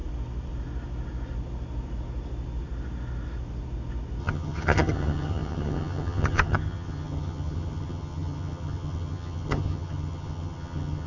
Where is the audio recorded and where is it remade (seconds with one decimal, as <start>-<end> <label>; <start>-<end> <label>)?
0.0-4.2 recorded; 4.2-11.1 remade